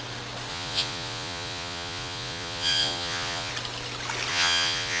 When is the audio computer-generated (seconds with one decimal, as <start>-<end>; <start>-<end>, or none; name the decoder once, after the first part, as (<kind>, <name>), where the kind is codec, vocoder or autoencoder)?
0.5-3.5 (vocoder, Vocos); 4.3-5.0